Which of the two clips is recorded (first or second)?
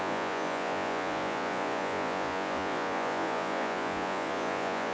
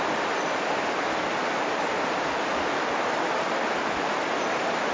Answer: second